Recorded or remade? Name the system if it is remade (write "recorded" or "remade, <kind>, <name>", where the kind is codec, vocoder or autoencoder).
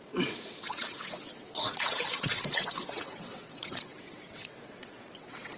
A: remade, vocoder, WaveNeXt